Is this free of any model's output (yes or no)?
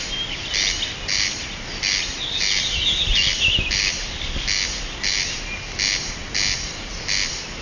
yes